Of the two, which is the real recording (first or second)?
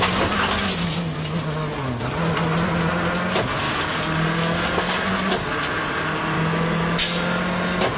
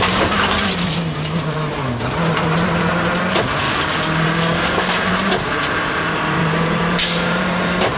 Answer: first